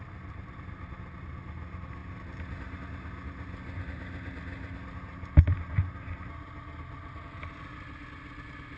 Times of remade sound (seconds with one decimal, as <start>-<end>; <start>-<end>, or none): none